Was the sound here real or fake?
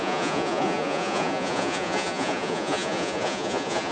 fake